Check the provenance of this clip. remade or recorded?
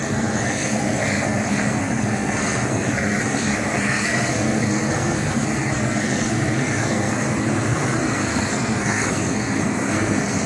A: remade